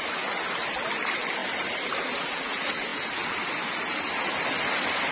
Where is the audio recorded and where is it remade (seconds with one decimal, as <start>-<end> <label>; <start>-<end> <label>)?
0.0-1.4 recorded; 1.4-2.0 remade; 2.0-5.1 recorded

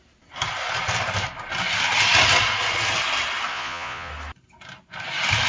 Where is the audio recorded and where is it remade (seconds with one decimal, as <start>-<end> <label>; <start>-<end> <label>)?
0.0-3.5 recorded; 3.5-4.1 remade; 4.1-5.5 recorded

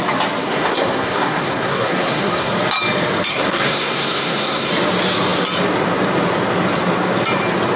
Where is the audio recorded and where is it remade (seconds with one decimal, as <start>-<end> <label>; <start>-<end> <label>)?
0.0-0.4 recorded; 0.4-2.5 remade; 2.5-3.3 recorded; 3.3-4.7 remade; 4.7-7.8 recorded

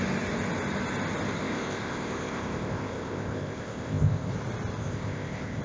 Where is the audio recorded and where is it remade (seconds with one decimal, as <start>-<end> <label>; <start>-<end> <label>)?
0.0-1.4 recorded; 1.4-4.3 remade; 4.3-4.8 recorded; 4.8-5.6 remade

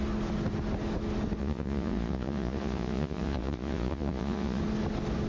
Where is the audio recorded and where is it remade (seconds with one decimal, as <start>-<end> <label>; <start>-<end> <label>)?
0.0-1.4 recorded; 1.4-4.6 remade; 4.6-5.3 recorded